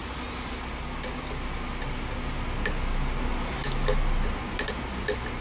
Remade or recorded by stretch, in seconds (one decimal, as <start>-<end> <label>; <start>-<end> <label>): 0.0-5.4 recorded